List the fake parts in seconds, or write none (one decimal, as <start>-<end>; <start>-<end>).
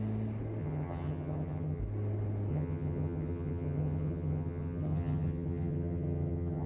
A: 0.6-1.8; 2.5-6.7